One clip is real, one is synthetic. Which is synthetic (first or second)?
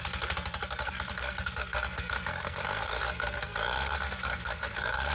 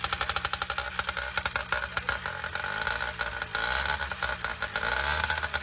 first